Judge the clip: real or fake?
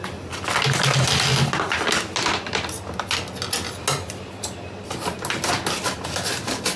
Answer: real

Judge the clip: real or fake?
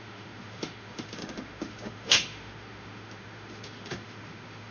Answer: fake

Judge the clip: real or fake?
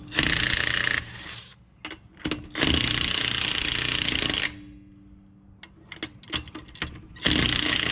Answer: real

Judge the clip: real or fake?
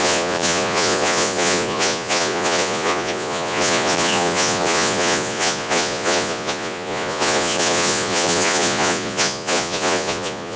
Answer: fake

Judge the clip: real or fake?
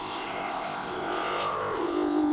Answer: fake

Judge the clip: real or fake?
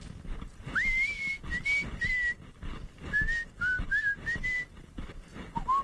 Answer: real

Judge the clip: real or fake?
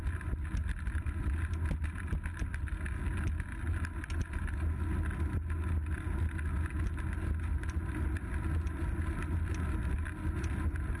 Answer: real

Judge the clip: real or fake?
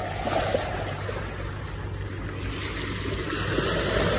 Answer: real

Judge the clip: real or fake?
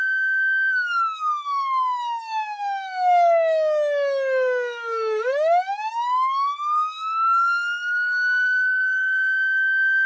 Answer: fake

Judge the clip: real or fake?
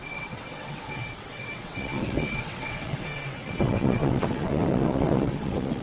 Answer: fake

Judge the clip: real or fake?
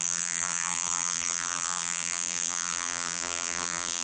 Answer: fake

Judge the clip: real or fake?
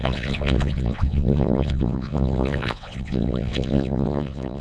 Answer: fake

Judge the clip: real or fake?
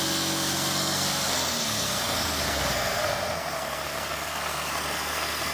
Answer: fake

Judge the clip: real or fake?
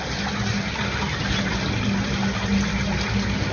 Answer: real